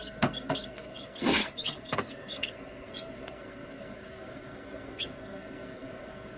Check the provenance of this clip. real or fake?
fake